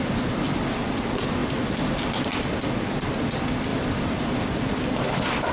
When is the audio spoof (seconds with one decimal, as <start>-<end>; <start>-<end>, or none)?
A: 1.4-2.5; 3.7-5.1